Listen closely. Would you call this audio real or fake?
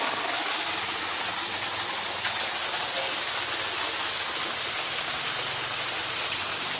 real